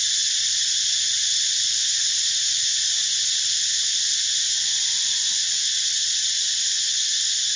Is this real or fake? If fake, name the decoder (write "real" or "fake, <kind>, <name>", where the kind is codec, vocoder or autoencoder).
real